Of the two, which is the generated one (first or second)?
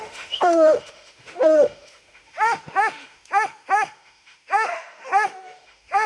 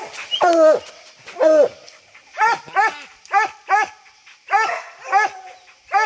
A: first